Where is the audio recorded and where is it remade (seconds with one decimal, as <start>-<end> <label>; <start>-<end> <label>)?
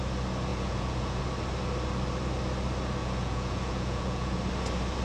0.0-0.5 recorded; 0.5-1.2 remade; 1.2-3.0 recorded; 3.0-4.5 remade; 4.5-5.0 recorded